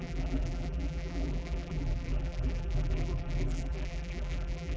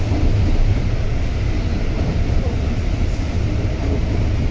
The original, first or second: second